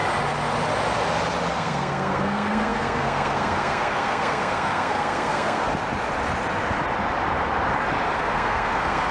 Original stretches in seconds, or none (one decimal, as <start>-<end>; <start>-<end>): 0.0-1.5; 5.6-8.2